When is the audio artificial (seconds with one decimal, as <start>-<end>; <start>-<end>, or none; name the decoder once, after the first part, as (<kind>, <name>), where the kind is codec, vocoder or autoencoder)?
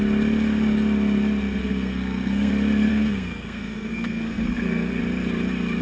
1.6-2.5 (codec, SNAC); 2.9-5.0